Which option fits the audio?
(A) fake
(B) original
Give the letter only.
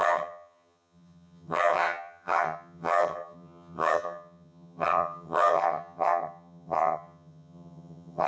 A